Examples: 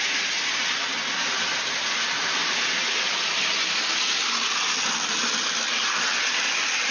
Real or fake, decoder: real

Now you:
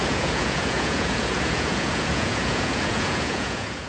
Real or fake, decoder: fake, vocoder, Vocos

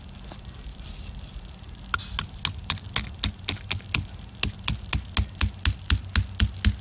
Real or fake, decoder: real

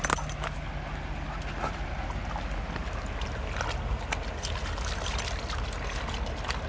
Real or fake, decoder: real